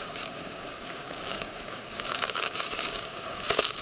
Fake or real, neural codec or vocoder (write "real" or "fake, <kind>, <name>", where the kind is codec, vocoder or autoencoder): fake, codec, DAC